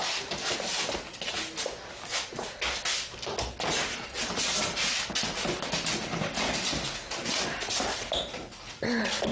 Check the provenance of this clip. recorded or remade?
recorded